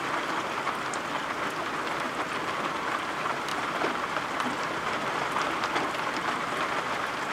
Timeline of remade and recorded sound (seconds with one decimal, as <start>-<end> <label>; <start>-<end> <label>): 0.0-1.2 remade; 1.2-3.5 recorded; 3.5-5.1 remade; 5.1-7.3 recorded